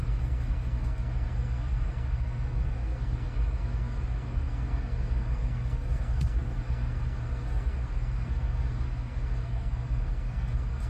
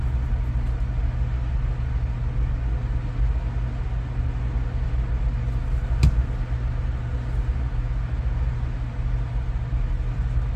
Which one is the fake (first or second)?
first